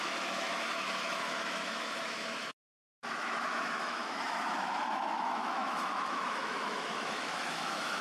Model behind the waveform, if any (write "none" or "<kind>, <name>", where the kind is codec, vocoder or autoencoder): autoencoder, DAC-VAE